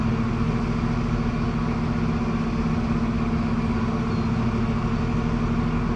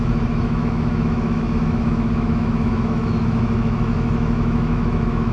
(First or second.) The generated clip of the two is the second